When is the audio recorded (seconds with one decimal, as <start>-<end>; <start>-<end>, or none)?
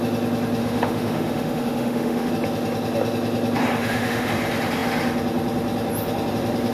0.0-0.6; 2.3-3.8; 4.3-6.7